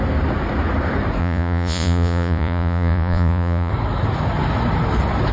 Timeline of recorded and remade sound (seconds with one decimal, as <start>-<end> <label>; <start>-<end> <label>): 0.0-1.2 recorded; 1.2-3.7 remade; 3.7-5.3 recorded